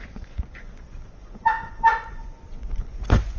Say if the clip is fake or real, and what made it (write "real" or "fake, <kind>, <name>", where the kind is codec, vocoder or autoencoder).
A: fake, vocoder, Vocos